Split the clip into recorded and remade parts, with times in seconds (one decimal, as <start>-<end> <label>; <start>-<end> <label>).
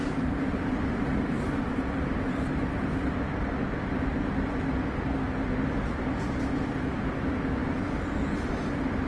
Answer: 0.0-2.9 remade; 2.9-9.1 recorded